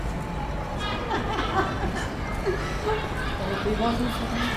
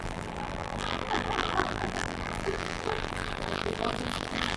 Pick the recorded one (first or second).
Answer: first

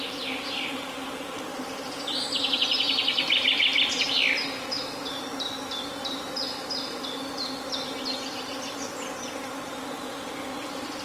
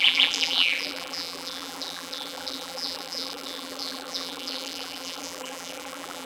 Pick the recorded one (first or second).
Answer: first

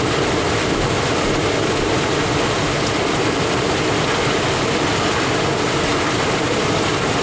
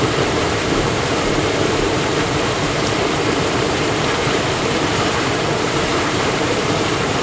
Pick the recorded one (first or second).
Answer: first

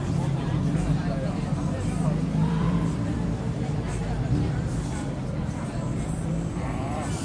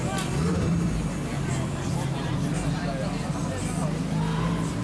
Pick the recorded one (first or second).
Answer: second